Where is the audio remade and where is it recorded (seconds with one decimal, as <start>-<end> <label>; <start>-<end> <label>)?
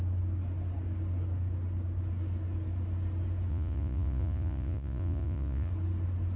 0.0-3.5 recorded; 3.5-5.7 remade; 5.7-6.4 recorded